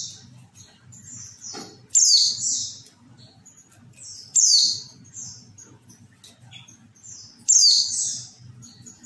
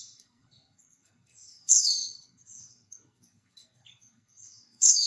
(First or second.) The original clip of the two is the first